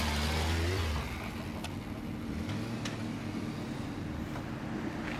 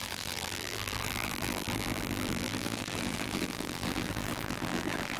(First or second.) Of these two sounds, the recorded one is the first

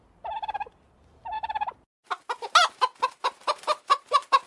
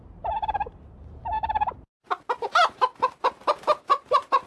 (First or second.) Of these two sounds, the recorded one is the first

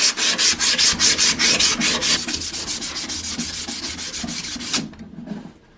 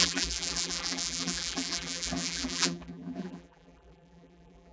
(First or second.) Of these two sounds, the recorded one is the first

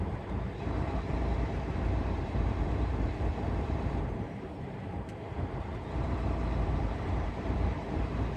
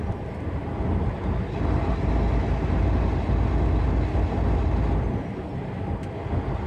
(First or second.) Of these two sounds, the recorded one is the second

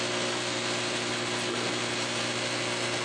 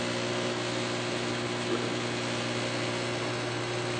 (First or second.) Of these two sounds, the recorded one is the second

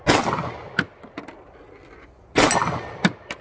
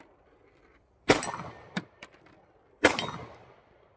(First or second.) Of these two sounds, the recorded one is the first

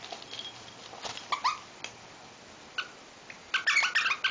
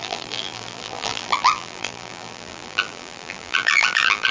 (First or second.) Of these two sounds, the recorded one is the first